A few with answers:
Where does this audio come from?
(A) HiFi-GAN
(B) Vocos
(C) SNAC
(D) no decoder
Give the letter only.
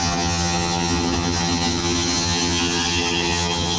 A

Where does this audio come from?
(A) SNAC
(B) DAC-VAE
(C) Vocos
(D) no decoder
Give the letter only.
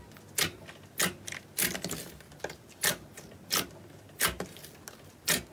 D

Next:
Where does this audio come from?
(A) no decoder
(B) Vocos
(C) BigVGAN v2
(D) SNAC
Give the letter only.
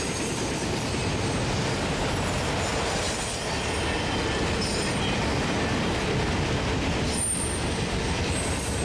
A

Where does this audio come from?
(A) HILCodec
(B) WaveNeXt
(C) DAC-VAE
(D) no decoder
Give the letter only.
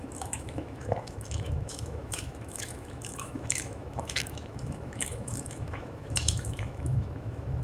C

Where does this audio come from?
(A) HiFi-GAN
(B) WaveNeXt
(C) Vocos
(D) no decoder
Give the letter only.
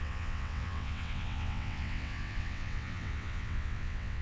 B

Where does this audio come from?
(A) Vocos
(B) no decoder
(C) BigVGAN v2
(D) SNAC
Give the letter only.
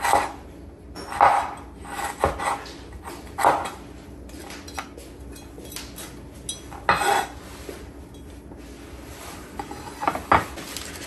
B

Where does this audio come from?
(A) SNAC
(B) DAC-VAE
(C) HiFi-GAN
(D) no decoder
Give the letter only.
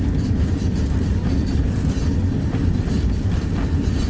D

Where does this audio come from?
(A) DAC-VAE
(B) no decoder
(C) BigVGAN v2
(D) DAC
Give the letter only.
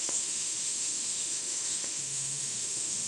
A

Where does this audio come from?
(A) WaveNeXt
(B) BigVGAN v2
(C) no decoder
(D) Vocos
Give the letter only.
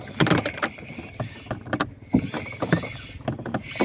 C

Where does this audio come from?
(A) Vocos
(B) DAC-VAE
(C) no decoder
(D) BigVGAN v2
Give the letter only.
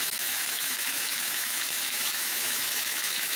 B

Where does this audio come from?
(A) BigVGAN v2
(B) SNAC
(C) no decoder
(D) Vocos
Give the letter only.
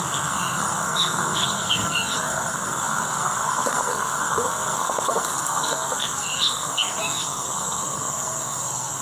B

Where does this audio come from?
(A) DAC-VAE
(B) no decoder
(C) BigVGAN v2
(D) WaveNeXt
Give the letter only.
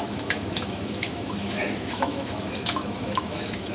A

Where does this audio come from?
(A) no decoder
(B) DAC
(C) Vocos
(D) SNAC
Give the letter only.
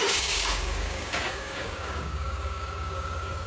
B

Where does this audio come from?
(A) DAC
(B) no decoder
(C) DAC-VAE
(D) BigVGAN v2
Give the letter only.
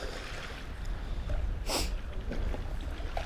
B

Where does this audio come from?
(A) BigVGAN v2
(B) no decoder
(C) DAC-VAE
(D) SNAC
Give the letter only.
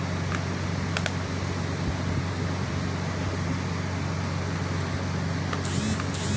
B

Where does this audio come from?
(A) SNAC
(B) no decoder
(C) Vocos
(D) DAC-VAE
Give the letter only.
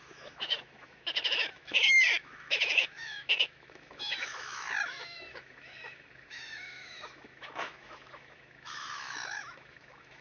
D